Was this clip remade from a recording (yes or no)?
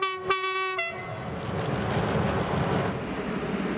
no